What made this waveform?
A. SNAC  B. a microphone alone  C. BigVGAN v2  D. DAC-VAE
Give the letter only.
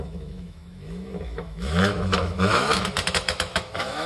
D